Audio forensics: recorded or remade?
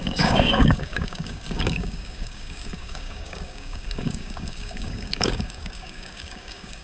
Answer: remade